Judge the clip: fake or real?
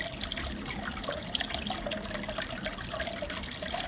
real